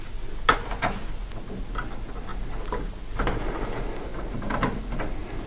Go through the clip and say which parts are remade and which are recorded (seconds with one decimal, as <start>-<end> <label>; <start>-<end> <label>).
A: 0.0-5.5 recorded